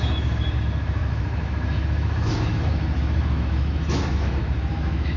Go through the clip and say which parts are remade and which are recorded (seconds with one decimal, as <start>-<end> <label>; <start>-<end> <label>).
0.0-5.2 remade